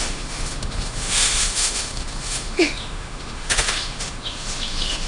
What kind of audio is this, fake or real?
fake